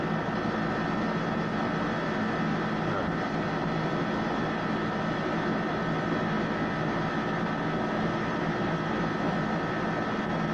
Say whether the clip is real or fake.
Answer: real